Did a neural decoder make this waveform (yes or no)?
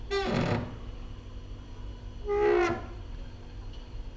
no